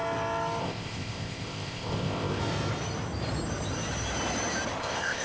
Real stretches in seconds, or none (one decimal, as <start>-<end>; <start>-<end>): 0.0-0.6; 2.4-4.8